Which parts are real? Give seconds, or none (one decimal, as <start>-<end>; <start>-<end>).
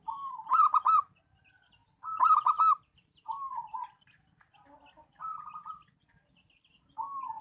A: none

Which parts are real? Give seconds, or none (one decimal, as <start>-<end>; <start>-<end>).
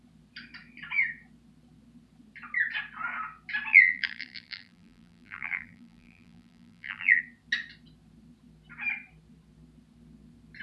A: 0.0-3.7; 7.2-10.6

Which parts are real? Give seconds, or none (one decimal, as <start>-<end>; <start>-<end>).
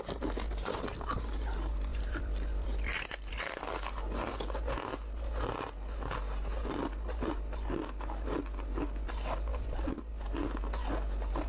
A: 0.0-1.9; 3.3-9.5; 10.1-11.5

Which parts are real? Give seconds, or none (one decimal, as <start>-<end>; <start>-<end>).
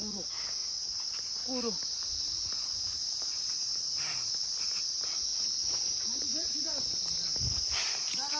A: 0.0-8.4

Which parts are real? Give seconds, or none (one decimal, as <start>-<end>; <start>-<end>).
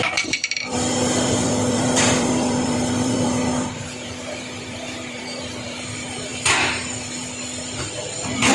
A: 6.3-7.8